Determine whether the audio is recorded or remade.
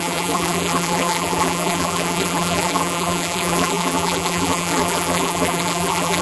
remade